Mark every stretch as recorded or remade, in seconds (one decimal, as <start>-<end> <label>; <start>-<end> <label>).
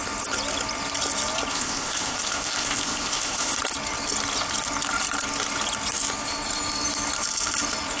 0.0-1.5 recorded; 1.5-3.6 remade; 3.6-8.0 recorded